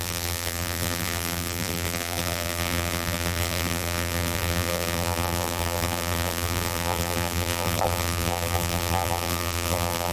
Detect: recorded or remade remade